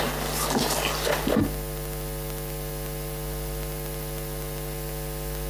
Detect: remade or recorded recorded